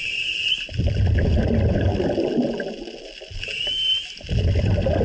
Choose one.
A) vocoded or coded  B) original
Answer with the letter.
B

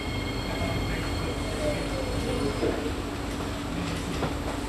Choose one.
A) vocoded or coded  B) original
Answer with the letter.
B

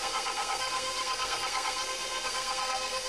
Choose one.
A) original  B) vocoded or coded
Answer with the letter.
B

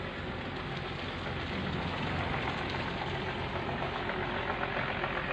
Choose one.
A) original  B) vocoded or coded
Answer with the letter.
A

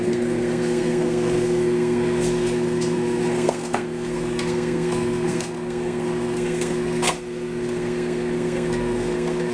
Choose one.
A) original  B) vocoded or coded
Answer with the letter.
B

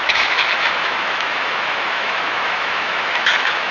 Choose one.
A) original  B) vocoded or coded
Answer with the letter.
B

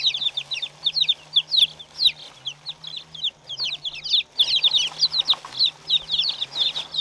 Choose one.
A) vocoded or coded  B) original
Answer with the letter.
B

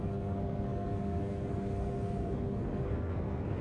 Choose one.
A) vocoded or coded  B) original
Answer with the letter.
A